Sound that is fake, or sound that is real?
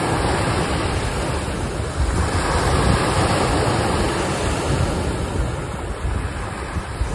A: real